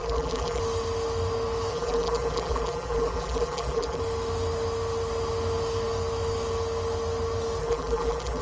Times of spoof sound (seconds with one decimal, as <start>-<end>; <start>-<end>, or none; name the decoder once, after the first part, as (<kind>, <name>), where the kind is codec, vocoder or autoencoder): 0.0-0.6 (vocoder, BigVGAN v2); 1.7-4.0; 7.6-8.4